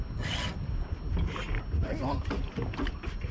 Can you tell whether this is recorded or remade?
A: recorded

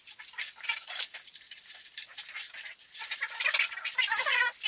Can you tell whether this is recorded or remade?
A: recorded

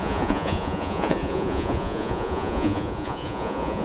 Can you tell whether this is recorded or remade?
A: remade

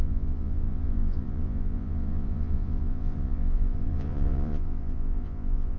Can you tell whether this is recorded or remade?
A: remade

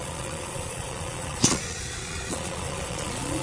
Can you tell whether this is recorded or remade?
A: remade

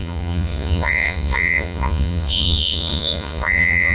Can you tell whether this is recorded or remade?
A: remade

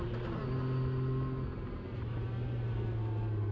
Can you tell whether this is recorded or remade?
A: recorded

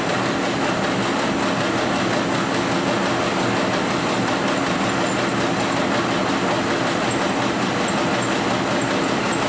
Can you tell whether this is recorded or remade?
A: recorded